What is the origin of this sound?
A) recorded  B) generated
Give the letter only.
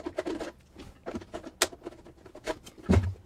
A